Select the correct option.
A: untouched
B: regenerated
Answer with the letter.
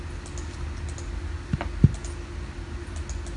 A